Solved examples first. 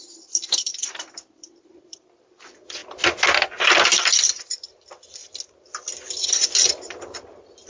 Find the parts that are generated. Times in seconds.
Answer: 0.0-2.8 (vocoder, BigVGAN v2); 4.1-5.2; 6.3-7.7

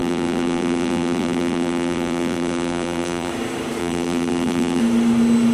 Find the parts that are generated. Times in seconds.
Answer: 0.0-3.3 (vocoder, BigVGAN v2); 3.8-4.8

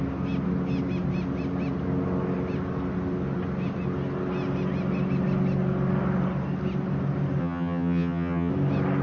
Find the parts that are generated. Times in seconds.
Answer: 7.4-8.5 (vocoder, HiFi-GAN)

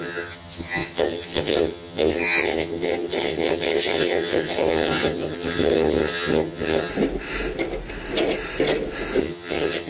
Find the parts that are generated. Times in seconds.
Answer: 0.0-6.9 (vocoder, HiFi-GAN); 9.2-9.9

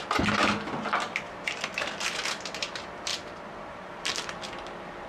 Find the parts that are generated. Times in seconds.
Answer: 3.1-3.9 (vocoder, BigVGAN v2)

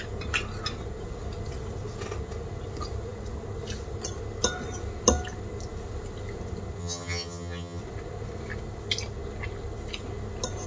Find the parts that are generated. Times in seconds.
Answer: 6.8-7.8 (vocoder, HiFi-GAN)

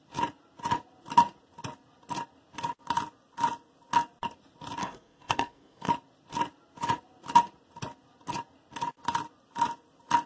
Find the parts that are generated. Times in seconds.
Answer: 4.8-5.9 (codec, SNAC)